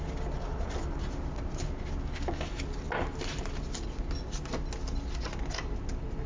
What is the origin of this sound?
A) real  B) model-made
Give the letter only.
A